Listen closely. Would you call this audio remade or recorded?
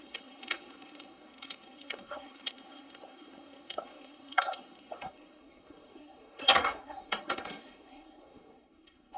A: remade